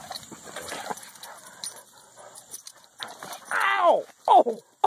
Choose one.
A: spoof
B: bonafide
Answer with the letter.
B